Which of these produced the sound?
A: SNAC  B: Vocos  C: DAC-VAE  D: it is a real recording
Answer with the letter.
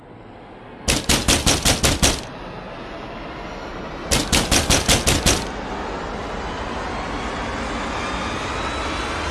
D